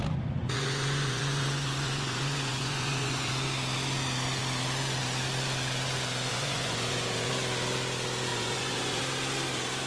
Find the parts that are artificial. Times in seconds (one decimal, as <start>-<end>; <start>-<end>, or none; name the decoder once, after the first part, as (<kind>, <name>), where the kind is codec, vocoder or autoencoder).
0.4-3.3 (vocoder, Vocos); 6.3-7.3; 8.3-9.0